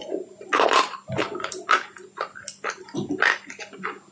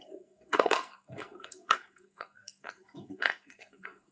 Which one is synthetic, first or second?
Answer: second